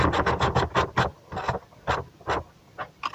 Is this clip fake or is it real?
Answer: real